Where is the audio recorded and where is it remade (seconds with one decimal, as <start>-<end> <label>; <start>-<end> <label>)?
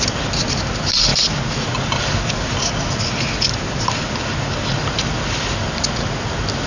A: 0.0-6.7 recorded